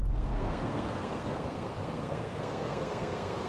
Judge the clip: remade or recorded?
remade